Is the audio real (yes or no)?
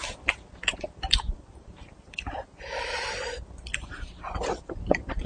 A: yes